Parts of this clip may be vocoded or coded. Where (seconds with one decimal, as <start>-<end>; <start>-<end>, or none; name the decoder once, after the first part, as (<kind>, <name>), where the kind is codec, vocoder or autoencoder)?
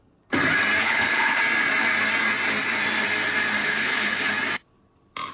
0.8-1.4 (codec, HILCodec); 3.6-4.3